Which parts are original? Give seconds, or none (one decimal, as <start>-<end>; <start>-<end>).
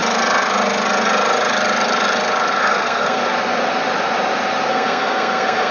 0.0-2.6; 3.2-4.7